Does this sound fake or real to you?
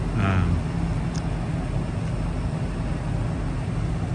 real